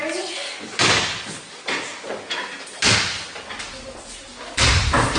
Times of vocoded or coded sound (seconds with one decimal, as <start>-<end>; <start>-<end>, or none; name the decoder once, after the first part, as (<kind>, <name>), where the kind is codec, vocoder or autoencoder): none